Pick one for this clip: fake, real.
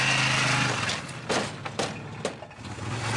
real